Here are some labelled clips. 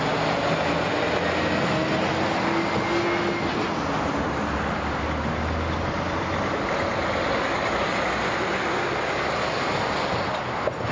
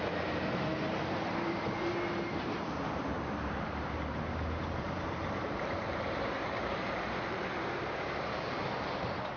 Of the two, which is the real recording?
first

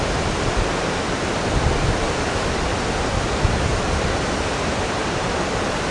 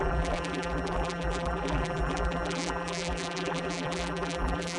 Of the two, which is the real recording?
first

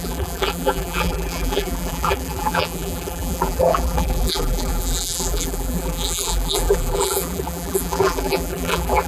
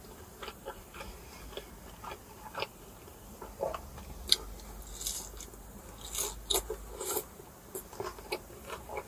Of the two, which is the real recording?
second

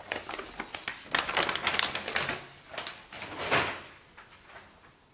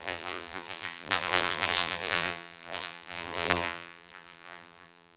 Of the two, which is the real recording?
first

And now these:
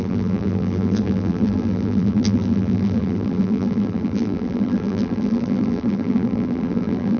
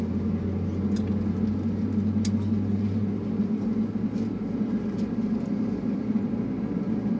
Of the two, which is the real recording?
second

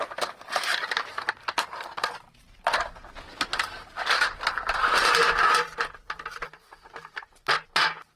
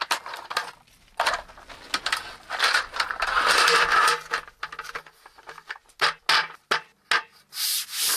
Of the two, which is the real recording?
second